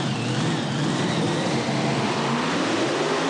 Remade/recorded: remade